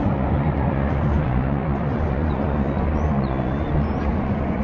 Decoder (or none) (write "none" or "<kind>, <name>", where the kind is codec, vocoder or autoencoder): vocoder, Vocos